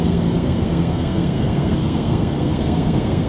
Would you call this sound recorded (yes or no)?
no